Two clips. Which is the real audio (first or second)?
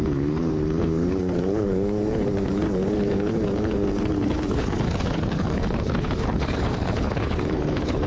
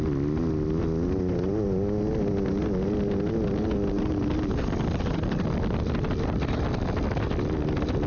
second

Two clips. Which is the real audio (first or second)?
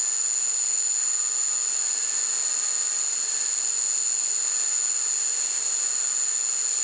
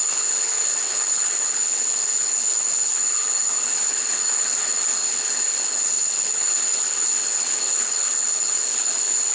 first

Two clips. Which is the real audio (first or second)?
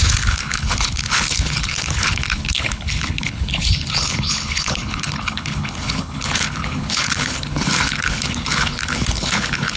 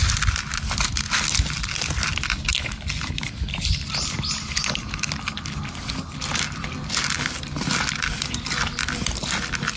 second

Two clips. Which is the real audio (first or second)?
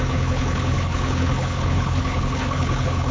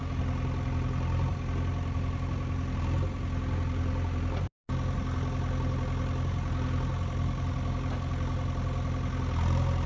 second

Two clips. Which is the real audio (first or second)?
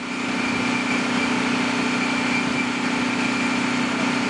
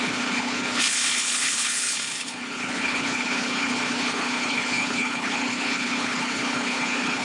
first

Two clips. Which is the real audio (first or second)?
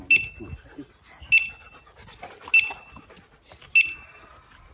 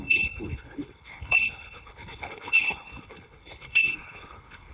first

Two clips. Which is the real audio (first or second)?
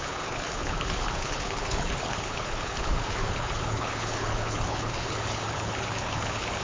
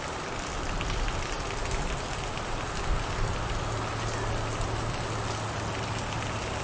second